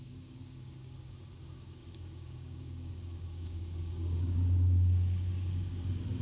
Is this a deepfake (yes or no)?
yes